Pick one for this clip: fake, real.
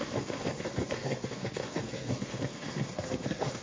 fake